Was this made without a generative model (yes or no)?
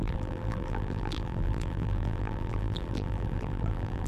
no